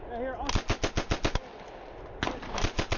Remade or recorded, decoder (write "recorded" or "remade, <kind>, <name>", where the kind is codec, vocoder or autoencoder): recorded